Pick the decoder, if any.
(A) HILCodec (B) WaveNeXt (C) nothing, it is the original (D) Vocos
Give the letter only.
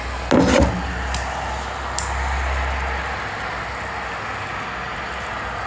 C